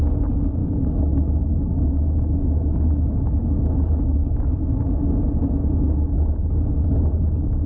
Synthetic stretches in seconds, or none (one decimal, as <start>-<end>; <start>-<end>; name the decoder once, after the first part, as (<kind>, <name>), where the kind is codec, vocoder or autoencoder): 0.6-5.2 (autoencoder, DAC-VAE)